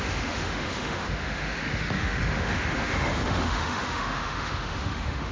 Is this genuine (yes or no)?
no